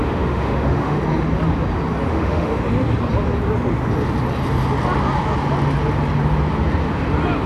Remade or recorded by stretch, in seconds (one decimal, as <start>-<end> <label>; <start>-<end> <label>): 0.0-1.0 remade; 1.0-2.1 recorded; 2.1-2.6 remade; 2.6-7.5 recorded